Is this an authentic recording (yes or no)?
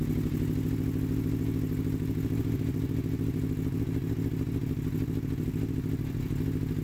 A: yes